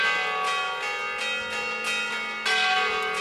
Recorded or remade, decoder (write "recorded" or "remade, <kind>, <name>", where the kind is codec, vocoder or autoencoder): recorded